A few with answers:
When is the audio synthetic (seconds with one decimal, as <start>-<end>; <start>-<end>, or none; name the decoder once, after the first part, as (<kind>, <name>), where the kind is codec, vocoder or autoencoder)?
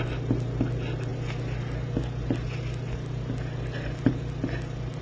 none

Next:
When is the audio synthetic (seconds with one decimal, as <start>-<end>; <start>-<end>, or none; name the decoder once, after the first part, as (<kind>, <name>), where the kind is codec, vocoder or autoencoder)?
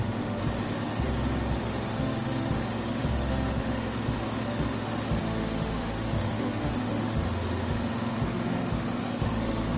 0.0-0.4 (autoencoder, DAC-VAE); 1.6-9.8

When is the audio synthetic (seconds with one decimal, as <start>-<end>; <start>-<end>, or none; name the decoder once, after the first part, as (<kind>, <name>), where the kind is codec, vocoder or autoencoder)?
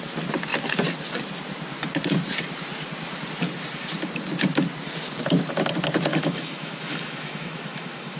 6.1-8.2 (autoencoder, DAC-VAE)